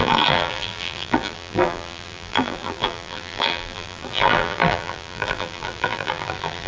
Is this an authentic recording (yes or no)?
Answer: no